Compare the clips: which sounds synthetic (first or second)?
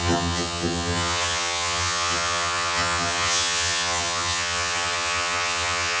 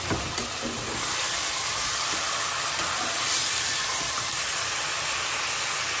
first